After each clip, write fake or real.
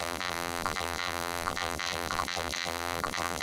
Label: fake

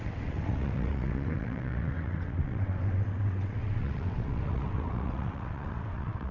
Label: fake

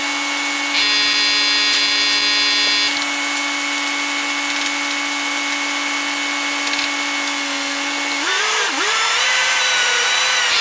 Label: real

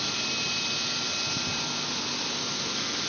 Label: real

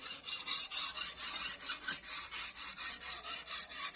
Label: real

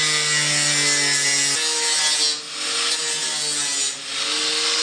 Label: real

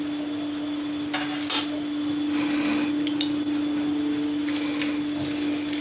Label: real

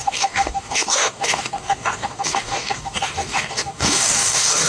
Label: fake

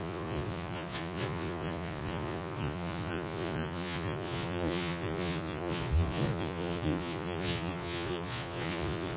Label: fake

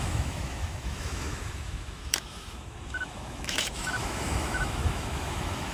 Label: fake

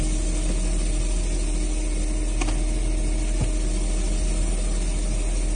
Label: real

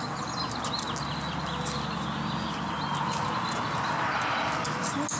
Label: real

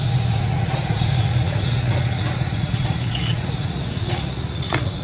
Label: fake